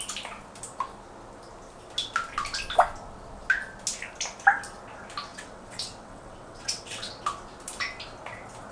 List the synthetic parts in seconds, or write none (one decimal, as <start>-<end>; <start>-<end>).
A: 5.3-7.1